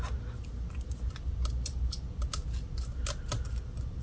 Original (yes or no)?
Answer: yes